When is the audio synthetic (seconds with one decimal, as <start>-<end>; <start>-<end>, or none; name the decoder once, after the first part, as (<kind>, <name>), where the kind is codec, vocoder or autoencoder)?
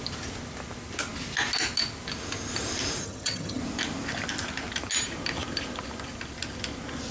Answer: 3.0-3.6 (vocoder, HiFi-GAN)